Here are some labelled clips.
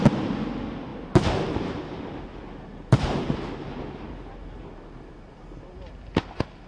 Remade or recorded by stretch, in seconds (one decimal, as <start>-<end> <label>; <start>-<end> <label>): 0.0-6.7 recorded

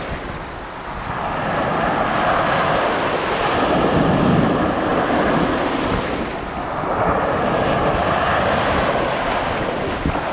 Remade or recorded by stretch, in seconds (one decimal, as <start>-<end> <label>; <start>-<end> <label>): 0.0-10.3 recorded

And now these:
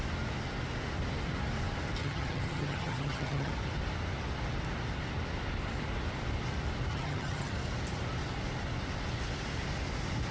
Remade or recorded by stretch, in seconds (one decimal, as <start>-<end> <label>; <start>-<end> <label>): 0.0-2.0 recorded; 2.0-3.5 remade; 3.5-6.9 recorded; 6.9-7.5 remade; 7.5-10.3 recorded

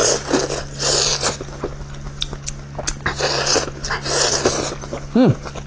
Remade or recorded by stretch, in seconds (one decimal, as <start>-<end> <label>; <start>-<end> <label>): 0.0-5.7 recorded

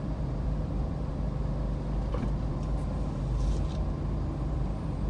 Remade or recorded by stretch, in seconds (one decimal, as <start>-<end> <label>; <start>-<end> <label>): 0.0-1.4 remade; 1.4-2.1 recorded; 2.1-2.5 remade; 2.5-4.5 recorded; 4.5-5.1 remade

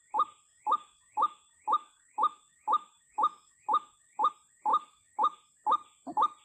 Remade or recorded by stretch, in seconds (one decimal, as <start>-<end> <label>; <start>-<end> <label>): 0.0-0.5 recorded; 0.5-4.3 remade; 4.3-4.7 recorded; 4.7-5.5 remade; 5.5-6.4 recorded